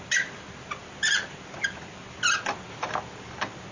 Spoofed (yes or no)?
no